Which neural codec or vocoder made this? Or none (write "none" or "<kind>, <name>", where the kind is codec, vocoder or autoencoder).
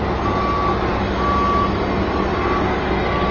none